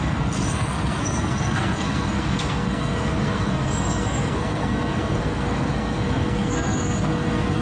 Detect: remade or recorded remade